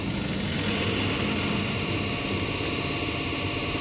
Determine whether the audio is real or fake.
real